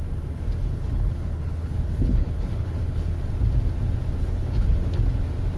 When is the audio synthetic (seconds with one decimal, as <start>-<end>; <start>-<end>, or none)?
0.6-3.2; 4.2-5.0